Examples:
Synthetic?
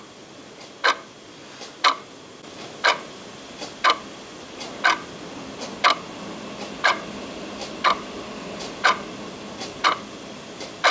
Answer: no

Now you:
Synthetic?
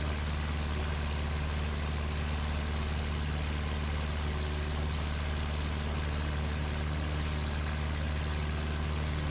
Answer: no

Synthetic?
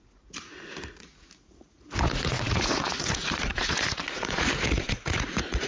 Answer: yes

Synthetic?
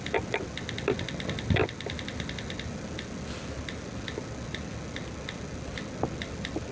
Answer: no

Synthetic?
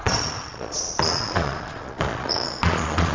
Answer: yes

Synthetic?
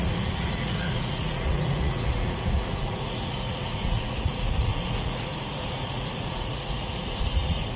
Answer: yes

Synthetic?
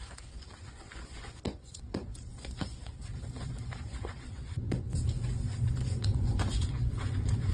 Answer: yes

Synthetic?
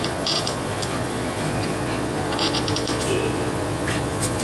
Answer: yes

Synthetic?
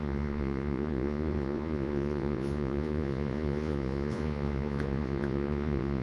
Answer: yes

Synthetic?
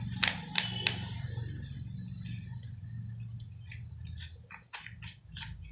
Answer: no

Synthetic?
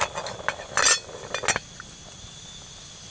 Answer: no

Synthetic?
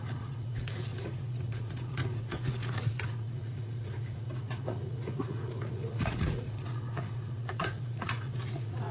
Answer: yes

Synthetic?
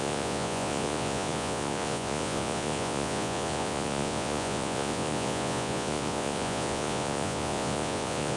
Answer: yes